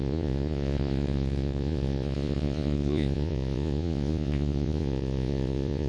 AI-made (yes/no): yes